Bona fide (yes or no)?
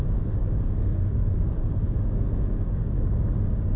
no